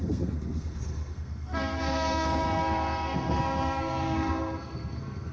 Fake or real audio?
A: fake